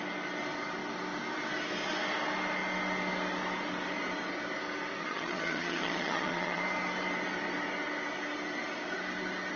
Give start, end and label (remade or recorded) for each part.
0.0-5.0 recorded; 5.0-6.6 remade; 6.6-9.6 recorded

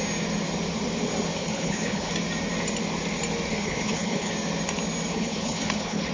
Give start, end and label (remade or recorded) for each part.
0.0-1.4 recorded; 1.4-2.1 remade; 2.1-3.5 recorded; 3.5-4.3 remade; 4.3-5.1 recorded; 5.1-6.1 remade

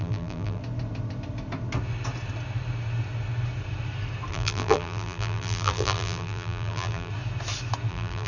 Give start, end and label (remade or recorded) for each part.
0.0-0.6 remade; 0.6-4.3 recorded; 4.3-7.1 remade; 7.1-7.9 recorded; 7.9-8.3 remade

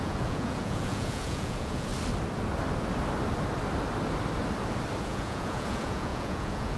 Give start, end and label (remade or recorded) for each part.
0.0-1.9 remade; 1.9-5.0 recorded; 5.0-6.8 remade

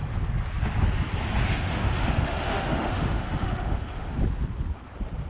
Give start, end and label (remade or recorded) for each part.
0.0-1.4 recorded; 1.4-4.1 remade; 4.1-5.3 recorded

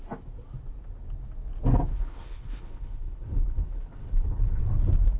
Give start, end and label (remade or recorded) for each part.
0.0-1.9 recorded; 1.9-4.6 remade; 4.6-5.2 recorded

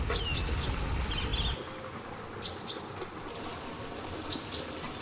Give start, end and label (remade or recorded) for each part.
0.0-5.0 recorded

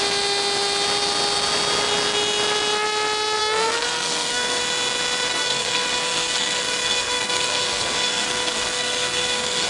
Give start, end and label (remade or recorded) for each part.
0.0-3.4 recorded; 3.4-4.6 remade; 4.6-5.3 recorded; 5.3-9.7 remade